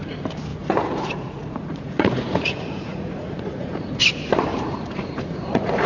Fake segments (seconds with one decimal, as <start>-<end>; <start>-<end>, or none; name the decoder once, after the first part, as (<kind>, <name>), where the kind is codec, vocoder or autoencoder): 0.5-4.0 (vocoder, Vocos); 4.5-5.9